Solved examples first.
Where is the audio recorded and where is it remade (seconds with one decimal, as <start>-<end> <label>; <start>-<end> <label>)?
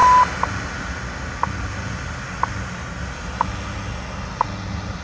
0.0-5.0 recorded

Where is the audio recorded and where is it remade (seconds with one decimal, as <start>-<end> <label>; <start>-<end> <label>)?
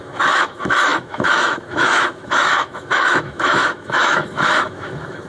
0.0-5.3 remade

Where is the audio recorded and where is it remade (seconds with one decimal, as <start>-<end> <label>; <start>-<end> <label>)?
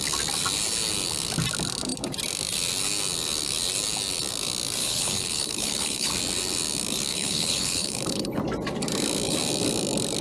0.0-4.8 recorded; 4.8-6.1 remade; 6.1-7.1 recorded; 7.1-8.4 remade; 8.4-10.2 recorded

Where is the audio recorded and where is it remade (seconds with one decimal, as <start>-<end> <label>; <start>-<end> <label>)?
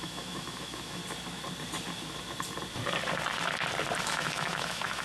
0.0-1.0 remade; 1.0-4.0 recorded; 4.0-5.0 remade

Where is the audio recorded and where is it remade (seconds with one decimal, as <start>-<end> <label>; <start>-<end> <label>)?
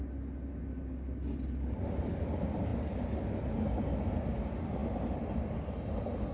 0.0-6.3 recorded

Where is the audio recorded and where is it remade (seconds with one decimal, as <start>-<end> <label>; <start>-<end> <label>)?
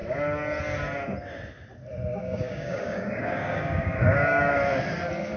0.0-2.2 recorded; 2.2-4.4 remade; 4.4-5.4 recorded